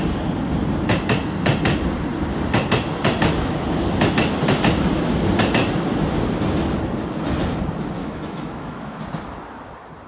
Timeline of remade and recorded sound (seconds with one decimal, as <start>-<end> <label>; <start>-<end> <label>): 0.0-8.0 recorded; 8.0-9.0 remade; 9.0-10.1 recorded